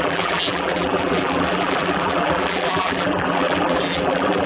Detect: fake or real fake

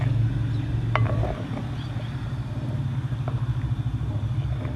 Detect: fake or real real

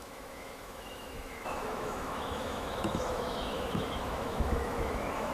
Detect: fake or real fake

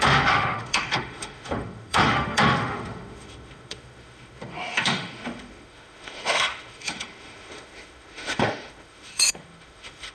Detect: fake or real fake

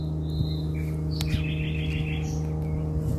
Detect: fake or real real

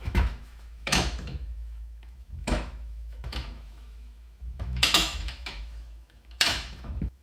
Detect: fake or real fake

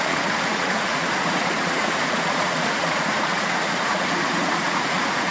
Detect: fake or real fake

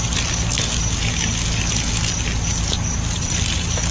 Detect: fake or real real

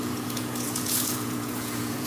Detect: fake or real fake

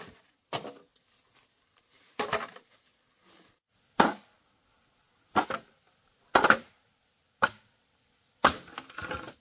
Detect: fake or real real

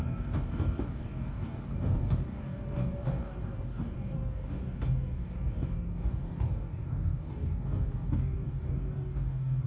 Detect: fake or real fake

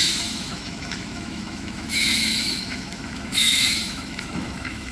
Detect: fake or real fake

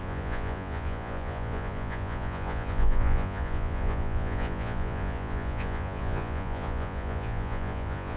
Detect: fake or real fake